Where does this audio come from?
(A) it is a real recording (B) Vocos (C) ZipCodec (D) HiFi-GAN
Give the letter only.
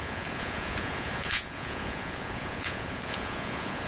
B